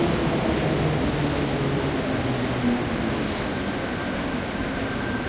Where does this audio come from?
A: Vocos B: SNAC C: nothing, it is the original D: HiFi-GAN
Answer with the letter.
C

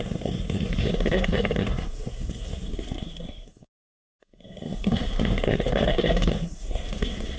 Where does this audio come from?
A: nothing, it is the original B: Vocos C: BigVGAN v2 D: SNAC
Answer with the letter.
D